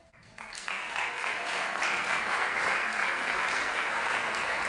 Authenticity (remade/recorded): remade